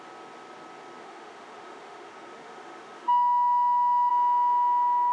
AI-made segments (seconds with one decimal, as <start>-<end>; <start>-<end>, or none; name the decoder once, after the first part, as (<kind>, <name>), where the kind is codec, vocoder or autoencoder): 1.0-4.1 (autoencoder, DAC-VAE)